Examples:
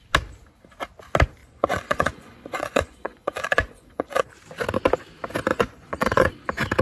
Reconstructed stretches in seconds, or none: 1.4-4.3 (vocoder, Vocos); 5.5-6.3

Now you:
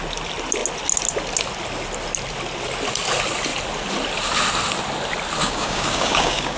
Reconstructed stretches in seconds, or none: 5.4-6.6 (codec, DAC)

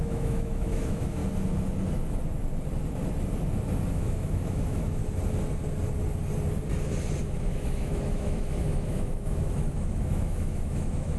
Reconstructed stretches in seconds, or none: 0.0-1.2 (autoencoder, DAC-VAE); 3.9-5.0; 7.2-11.2

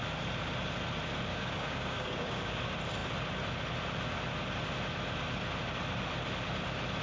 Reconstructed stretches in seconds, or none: 1.3-2.6 (codec, DAC)

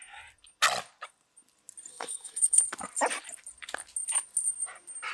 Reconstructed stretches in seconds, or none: 1.9-2.6 (codec, SNAC)

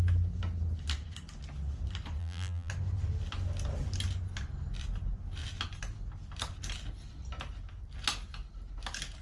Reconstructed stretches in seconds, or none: 2.2-2.7 (vocoder, BigVGAN v2)

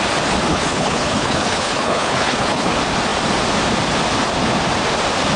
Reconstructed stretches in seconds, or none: 0.5-2.7 (codec, HILCodec)

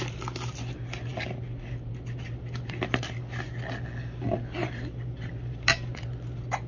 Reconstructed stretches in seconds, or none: none